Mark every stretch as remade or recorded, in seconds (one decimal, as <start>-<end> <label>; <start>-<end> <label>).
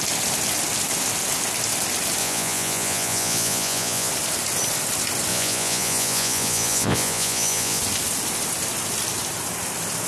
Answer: 0.0-2.2 recorded; 2.2-4.1 remade; 4.1-5.3 recorded; 5.3-7.8 remade; 7.8-10.1 recorded